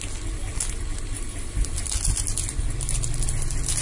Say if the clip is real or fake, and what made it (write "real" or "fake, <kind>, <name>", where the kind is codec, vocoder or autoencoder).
real